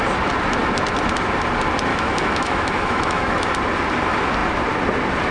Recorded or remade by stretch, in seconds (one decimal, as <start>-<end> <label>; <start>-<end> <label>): 0.0-1.9 recorded; 1.9-3.5 remade; 3.5-5.3 recorded